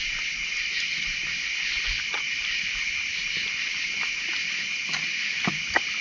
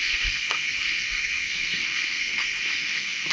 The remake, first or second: second